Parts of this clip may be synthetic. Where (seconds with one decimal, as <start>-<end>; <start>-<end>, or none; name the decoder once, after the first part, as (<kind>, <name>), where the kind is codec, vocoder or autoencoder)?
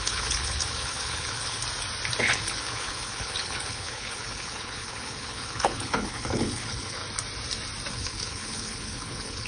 0.0-1.6 (codec, HILCodec); 2.2-7.0; 7.9-9.5